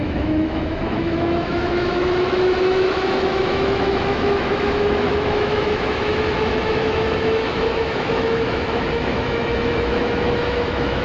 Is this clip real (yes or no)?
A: no